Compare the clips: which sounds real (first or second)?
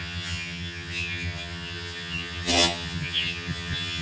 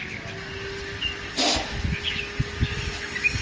second